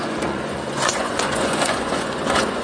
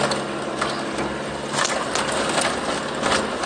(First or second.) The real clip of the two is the second